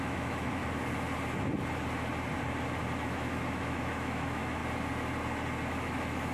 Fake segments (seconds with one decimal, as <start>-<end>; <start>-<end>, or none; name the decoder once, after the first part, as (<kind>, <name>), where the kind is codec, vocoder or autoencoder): 0.0-0.6 (autoencoder, DAC-VAE); 3.0-4.6; 5.7-6.3